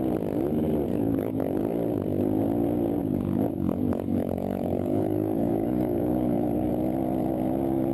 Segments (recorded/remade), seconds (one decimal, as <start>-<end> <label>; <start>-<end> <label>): 0.0-0.9 recorded; 0.9-1.6 remade; 1.6-3.0 recorded; 3.0-6.7 remade; 6.7-7.9 recorded